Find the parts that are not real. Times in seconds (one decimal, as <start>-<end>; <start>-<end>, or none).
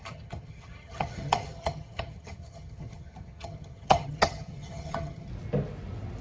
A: 0.0-5.3